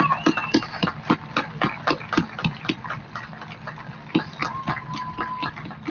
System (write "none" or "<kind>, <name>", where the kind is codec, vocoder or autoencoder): none